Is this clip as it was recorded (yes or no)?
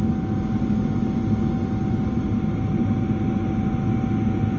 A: yes